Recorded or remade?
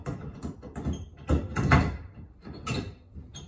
recorded